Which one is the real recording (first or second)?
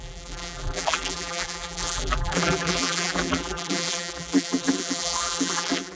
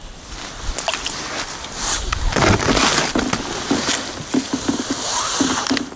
second